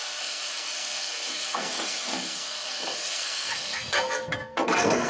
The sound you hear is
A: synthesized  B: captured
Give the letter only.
A